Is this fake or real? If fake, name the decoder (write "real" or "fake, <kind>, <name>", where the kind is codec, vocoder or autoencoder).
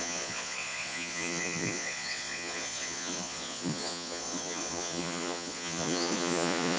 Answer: fake, vocoder, Vocos